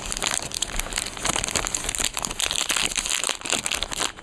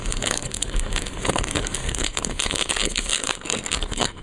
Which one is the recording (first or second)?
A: first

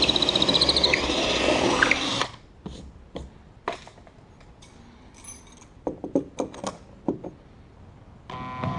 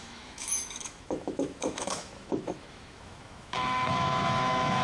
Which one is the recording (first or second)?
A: first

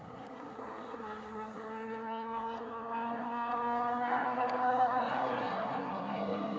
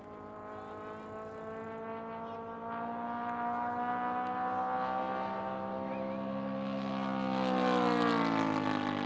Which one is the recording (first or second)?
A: second